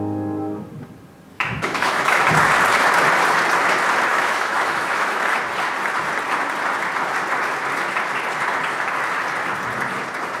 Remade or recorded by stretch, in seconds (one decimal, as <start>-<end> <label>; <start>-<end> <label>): 0.0-1.3 recorded; 1.3-2.2 remade; 2.2-4.1 recorded; 4.1-5.4 remade; 5.4-10.4 recorded